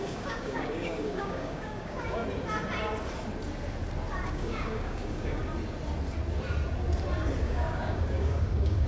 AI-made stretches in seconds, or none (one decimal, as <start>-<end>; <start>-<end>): 0.0-2.2; 4.3-5.4; 7.4-8.9